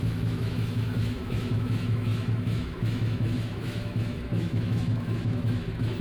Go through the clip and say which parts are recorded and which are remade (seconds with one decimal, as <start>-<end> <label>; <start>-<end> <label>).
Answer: 0.0-6.0 remade